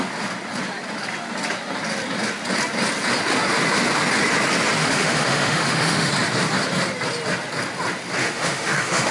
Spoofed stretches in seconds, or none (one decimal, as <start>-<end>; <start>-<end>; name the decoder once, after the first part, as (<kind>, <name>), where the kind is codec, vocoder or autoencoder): 4.8-6.1 (autoencoder, DAC-VAE); 8.2-9.1